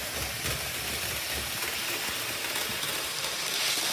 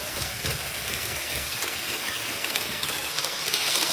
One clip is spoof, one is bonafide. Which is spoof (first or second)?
second